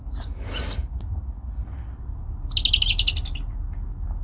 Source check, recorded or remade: recorded